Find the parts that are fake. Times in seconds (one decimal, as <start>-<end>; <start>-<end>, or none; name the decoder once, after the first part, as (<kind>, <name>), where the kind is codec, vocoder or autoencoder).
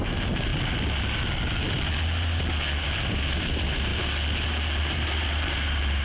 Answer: 0.0-0.5 (vocoder, BigVGAN v2); 2.8-3.9; 4.8-6.0